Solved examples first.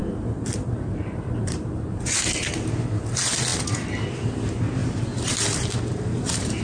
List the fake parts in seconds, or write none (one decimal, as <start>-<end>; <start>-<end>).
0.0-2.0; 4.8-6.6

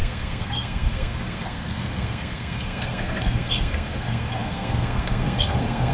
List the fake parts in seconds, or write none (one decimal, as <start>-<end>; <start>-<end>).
0.0-5.9

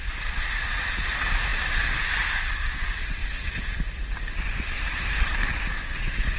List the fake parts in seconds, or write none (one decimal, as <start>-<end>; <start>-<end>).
none

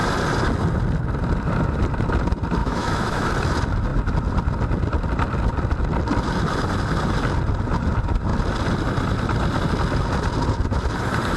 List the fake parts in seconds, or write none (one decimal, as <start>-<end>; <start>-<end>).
2.6-3.3

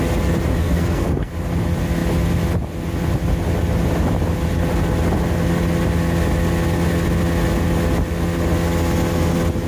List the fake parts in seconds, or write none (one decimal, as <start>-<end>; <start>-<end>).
0.6-1.3